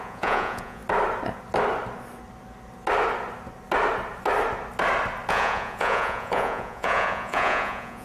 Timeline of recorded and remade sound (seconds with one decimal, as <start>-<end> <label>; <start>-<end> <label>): 0.0-0.8 remade; 0.8-5.3 recorded; 5.3-8.0 remade